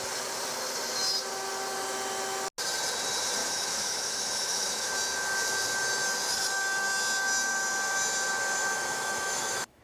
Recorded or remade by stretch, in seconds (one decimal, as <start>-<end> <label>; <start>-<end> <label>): 0.0-3.4 recorded; 3.4-4.9 remade; 4.9-8.6 recorded; 8.6-9.8 remade